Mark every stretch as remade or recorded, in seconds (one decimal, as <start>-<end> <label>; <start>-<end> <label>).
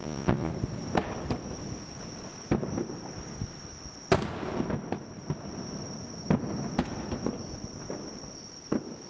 0.0-0.5 remade; 0.5-9.1 recorded